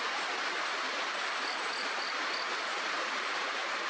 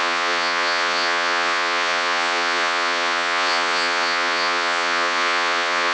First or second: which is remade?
second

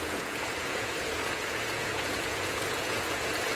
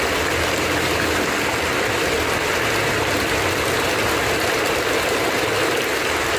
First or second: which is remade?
first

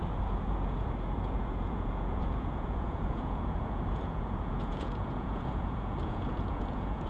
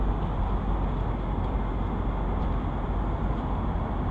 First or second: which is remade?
first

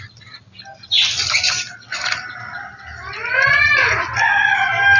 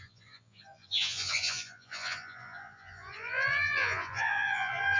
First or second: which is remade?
second